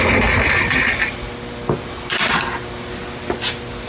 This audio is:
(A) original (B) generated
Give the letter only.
A